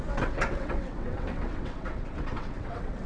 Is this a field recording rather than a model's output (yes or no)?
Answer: no